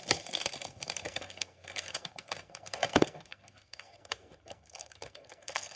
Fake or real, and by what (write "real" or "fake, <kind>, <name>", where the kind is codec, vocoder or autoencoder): fake, codec, SNAC